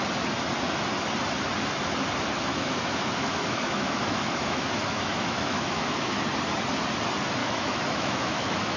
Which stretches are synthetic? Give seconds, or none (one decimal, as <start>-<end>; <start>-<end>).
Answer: 2.5-6.2; 7.4-8.8